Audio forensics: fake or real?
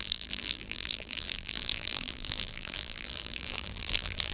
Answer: fake